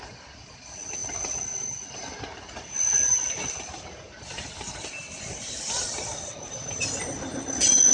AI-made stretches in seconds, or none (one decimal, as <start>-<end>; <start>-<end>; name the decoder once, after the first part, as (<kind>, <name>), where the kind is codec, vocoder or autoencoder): none